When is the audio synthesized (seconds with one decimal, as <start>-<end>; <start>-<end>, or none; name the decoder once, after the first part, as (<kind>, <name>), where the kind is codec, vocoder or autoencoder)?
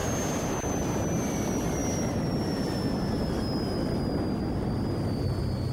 none